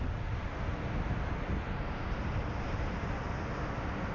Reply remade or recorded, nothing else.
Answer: recorded